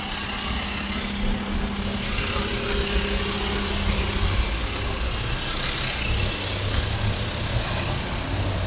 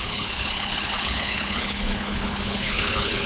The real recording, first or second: first